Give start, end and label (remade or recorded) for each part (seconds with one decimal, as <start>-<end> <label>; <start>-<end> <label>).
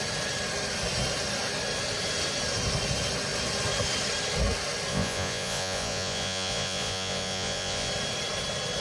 0.0-4.9 recorded; 4.9-7.9 remade; 7.9-8.8 recorded